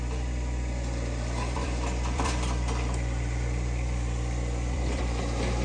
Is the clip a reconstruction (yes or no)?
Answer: yes